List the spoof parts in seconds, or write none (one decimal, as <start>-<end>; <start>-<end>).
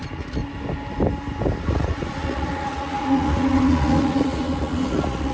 0.0-0.4; 1.6-5.3